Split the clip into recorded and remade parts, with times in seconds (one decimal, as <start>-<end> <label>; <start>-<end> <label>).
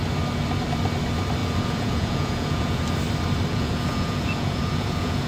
0.0-1.4 recorded; 1.4-2.8 remade; 2.8-3.5 recorded; 3.5-5.3 remade